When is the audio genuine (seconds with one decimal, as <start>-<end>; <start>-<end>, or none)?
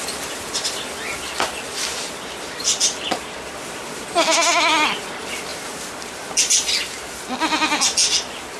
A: 0.0-5.5; 6.2-8.6